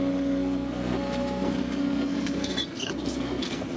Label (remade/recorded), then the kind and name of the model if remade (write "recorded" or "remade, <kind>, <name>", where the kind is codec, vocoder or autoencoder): remade, codec, SNAC